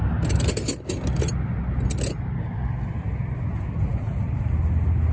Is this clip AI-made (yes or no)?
no